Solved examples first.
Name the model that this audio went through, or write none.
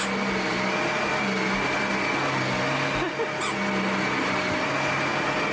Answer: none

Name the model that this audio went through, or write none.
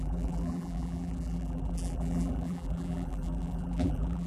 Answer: vocoder, BigVGAN v2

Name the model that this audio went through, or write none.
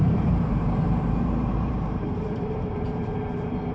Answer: vocoder, BigVGAN v2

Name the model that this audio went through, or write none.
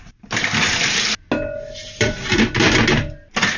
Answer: none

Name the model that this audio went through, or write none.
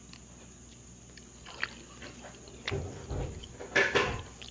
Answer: none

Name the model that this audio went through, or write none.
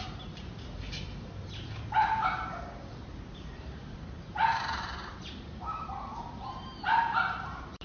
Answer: vocoder, BigVGAN v2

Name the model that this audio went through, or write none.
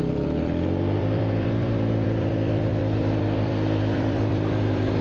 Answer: vocoder, BigVGAN v2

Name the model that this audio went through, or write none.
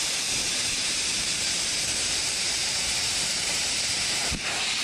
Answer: vocoder, BigVGAN v2